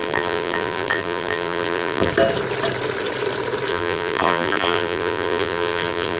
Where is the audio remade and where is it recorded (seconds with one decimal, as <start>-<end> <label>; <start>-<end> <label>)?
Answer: 0.0-2.1 remade; 2.1-3.7 recorded; 3.7-6.2 remade